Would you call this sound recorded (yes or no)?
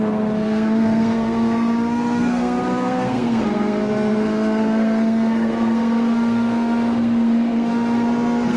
no